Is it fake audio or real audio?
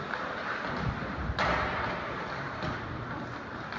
real